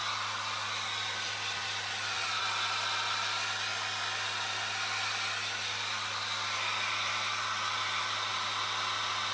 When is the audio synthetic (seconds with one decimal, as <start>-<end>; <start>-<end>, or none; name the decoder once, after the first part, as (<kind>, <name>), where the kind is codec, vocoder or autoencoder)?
none